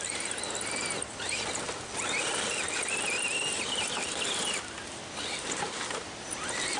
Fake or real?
real